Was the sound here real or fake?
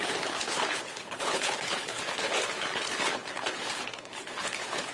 fake